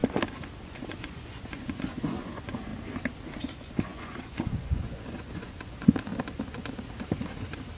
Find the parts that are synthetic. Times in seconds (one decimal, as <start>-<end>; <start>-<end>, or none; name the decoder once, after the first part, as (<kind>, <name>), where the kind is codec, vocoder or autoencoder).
0.6-2.7 (vocoder, Vocos); 3.4-6.1